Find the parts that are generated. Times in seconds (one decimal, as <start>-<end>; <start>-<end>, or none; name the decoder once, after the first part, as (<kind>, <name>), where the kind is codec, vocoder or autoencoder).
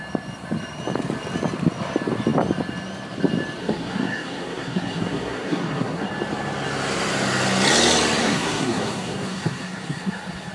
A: 3.6-6.1 (codec, SNAC); 8.2-10.5